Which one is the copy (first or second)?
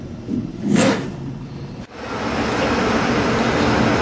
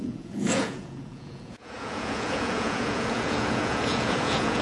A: second